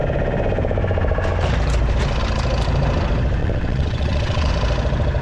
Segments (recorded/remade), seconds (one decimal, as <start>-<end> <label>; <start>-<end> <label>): 0.0-3.4 recorded; 3.4-4.5 remade; 4.5-5.2 recorded